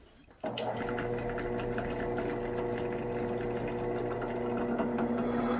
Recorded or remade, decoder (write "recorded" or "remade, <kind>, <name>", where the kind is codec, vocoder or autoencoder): recorded